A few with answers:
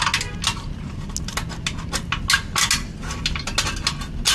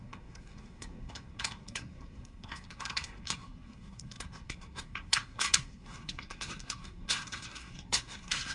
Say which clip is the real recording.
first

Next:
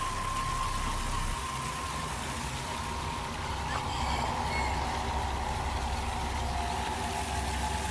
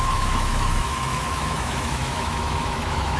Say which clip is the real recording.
first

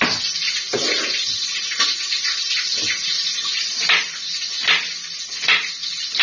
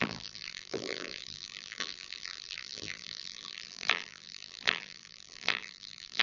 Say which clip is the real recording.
first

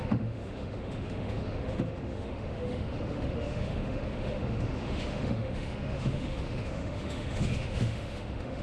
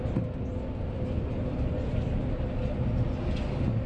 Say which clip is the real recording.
second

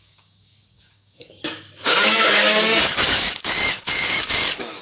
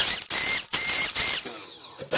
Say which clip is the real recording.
second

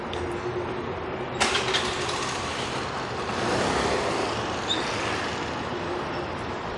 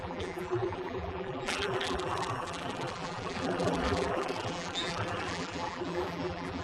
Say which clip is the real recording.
first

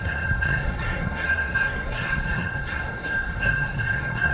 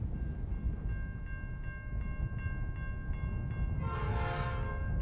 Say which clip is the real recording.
second